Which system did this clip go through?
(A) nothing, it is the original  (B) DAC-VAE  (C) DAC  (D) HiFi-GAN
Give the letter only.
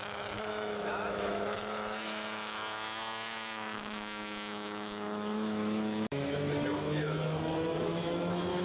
B